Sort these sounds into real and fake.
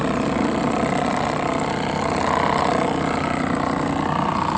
real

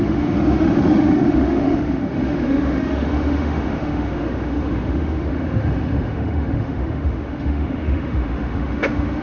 fake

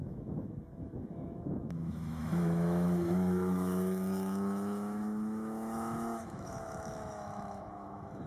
fake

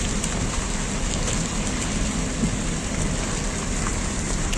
real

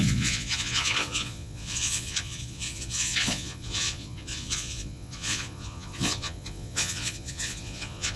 fake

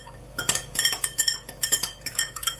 fake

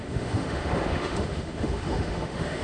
fake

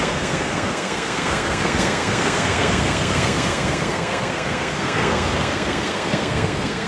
fake